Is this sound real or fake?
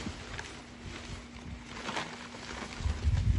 real